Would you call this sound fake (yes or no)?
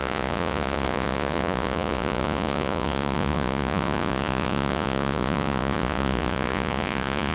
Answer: yes